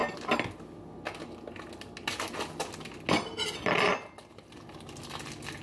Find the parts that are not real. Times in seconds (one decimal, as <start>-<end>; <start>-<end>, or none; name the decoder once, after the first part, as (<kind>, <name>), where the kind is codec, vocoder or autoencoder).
none